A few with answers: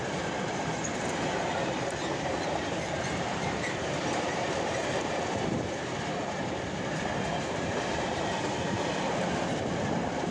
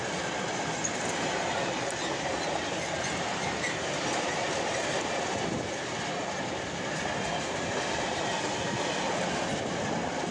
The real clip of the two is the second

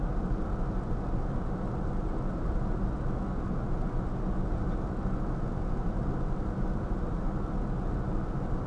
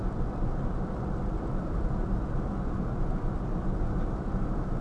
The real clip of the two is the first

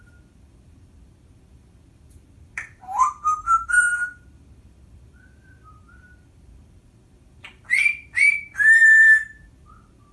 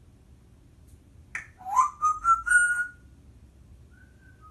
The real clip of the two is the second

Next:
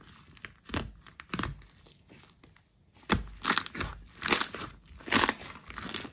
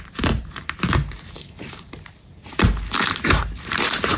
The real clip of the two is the first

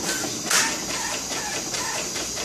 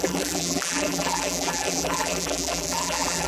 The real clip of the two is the first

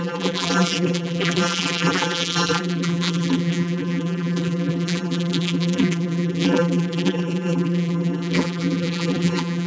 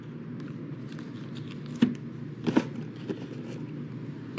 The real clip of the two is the second